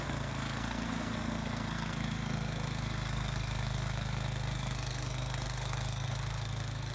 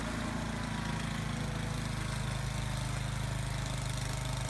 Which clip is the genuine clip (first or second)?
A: second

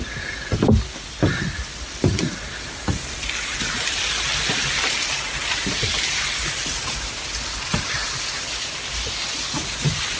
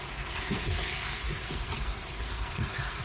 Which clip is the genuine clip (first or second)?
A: first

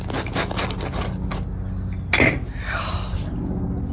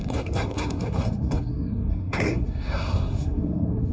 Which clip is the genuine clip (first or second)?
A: first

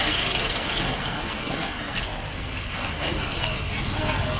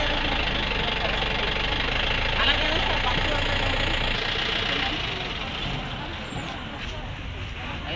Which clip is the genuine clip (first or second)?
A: second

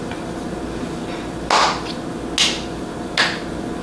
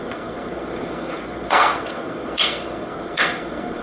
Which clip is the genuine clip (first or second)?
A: first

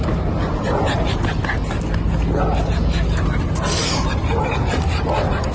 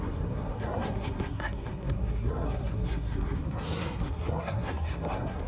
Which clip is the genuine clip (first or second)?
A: first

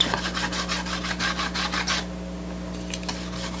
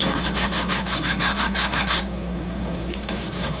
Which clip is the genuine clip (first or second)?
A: first